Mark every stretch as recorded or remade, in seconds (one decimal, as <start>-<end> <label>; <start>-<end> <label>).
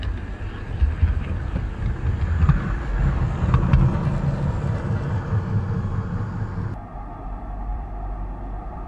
0.0-7.7 recorded; 7.7-8.9 remade